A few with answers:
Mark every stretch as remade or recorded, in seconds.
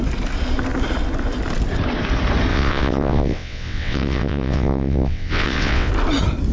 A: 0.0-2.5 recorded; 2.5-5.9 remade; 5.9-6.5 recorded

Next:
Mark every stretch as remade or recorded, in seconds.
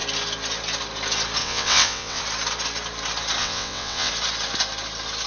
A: 0.0-1.4 recorded; 1.4-2.2 remade; 2.2-3.4 recorded; 3.4-4.1 remade; 4.1-5.3 recorded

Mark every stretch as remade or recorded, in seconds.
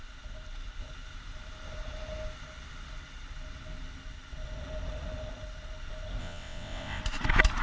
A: 0.0-6.2 recorded; 6.2-7.0 remade; 7.0-7.6 recorded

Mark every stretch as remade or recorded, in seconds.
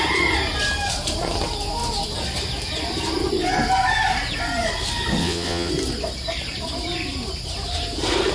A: 0.0-5.2 recorded; 5.2-5.7 remade; 5.7-8.3 recorded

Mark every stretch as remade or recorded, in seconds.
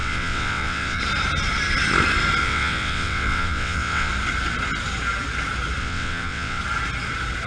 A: 0.0-1.0 remade; 1.0-2.4 recorded; 2.4-4.1 remade; 4.1-5.8 recorded; 5.8-6.6 remade; 6.6-7.5 recorded